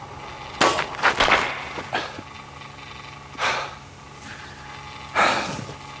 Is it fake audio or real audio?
real